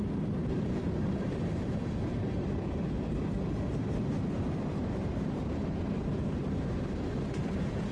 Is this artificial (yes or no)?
yes